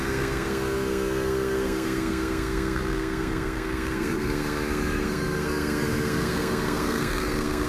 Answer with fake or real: fake